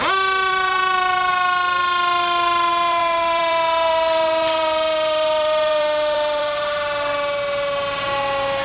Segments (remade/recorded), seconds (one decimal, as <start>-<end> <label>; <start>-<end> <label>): 0.0-0.5 recorded; 0.5-1.3 remade; 1.3-2.7 recorded; 2.7-7.1 remade; 7.1-8.6 recorded